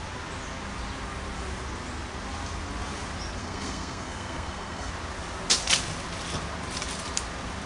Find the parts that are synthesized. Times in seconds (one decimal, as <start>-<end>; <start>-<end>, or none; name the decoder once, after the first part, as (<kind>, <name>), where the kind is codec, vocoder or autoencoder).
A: 3.4-4.9 (codec, SNAC)

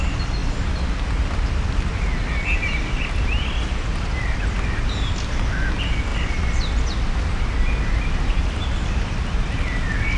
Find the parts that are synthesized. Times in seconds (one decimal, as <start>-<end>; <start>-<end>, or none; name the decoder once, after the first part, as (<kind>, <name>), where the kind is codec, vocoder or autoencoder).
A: none

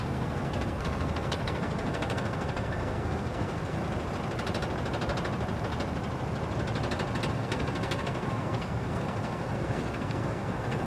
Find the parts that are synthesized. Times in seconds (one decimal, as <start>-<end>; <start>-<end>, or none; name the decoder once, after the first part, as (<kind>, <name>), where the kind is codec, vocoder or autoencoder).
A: 0.0-3.8 (codec, SNAC); 7.3-10.9

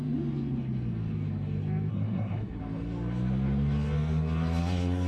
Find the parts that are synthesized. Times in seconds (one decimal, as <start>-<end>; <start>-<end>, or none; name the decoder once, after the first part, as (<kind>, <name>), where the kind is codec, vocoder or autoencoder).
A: 1.9-2.6 (codec, SNAC)

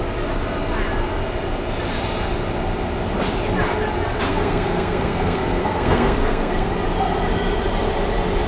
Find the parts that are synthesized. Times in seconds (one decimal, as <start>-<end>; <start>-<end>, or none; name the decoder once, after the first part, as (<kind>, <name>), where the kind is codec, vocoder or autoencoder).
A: 4.3-6.7 (codec, SNAC)

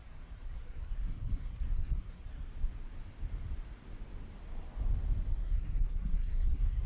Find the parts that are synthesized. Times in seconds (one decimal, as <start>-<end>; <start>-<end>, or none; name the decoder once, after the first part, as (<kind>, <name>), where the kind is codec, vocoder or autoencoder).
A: 0.0-2.5 (codec, SNAC); 5.3-6.9

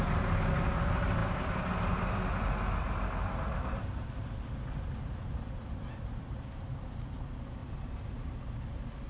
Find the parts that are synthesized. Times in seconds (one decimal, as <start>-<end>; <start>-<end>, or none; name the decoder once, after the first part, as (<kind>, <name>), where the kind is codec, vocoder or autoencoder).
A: none

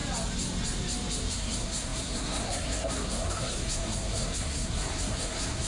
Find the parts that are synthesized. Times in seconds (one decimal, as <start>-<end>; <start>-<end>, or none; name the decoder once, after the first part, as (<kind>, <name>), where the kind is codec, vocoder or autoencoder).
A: 1.3-5.7 (codec, SNAC)